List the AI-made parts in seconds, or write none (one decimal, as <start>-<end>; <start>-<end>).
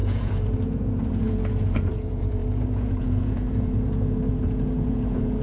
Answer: 0.0-5.4